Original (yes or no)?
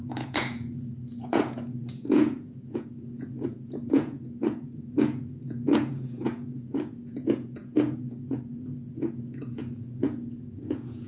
no